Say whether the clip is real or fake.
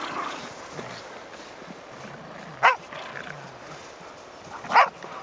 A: real